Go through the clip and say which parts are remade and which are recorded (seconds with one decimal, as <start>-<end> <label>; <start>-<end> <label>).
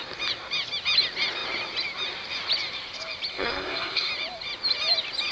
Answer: 0.0-3.3 recorded; 3.3-4.1 remade; 4.1-5.3 recorded